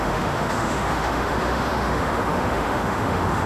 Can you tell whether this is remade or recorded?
remade